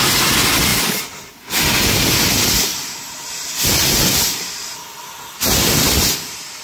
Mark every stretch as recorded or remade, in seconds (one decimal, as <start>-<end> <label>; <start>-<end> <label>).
0.0-0.7 recorded; 0.7-4.7 remade; 4.7-6.6 recorded